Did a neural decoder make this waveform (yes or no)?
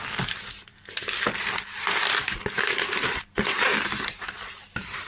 yes